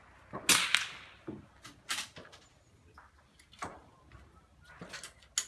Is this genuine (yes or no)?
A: yes